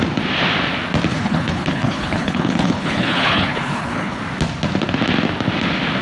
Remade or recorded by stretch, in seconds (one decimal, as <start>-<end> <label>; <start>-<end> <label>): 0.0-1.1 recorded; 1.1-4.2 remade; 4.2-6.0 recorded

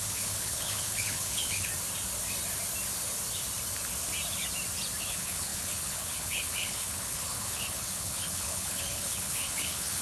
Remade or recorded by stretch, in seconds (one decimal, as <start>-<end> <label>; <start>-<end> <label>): 0.0-1.7 remade; 1.7-5.0 recorded; 5.0-10.0 remade

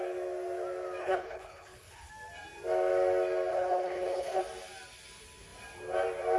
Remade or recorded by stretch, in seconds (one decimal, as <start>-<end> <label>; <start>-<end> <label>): 0.0-1.0 recorded; 1.0-2.1 remade; 2.1-3.5 recorded; 3.5-4.4 remade; 4.4-6.4 recorded

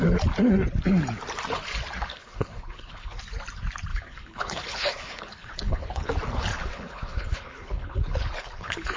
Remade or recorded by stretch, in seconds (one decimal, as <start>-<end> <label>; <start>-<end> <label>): 0.0-2.1 recorded; 2.1-3.2 remade; 3.2-3.9 recorded; 3.9-6.1 remade; 6.1-6.5 recorded; 6.5-9.0 remade

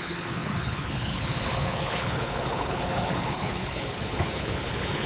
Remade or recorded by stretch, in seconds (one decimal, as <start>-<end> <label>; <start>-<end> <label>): 0.0-5.1 remade

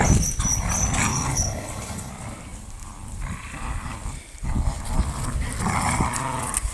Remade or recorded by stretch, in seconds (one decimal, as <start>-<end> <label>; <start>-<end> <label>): 0.0-1.1 recorded; 1.1-2.1 remade; 2.1-6.7 recorded

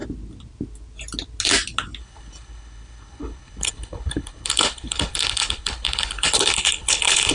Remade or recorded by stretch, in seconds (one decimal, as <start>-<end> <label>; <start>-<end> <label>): 0.0-2.0 recorded; 2.0-7.3 remade

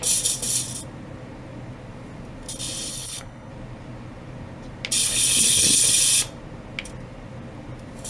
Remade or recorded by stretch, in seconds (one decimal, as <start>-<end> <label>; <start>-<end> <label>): 0.0-2.9 recorded; 2.9-3.5 remade; 3.5-5.0 recorded; 5.0-5.9 remade; 5.9-8.1 recorded